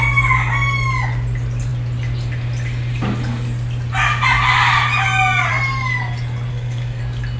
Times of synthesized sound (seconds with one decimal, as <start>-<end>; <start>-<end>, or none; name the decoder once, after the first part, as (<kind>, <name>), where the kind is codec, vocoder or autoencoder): 6.5-7.0 (codec, SNAC)